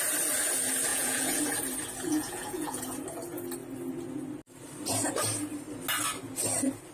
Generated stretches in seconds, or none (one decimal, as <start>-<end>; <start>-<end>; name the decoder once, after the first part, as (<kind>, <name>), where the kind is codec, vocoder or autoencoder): 0.9-1.4 (vocoder, Vocos); 2.1-2.8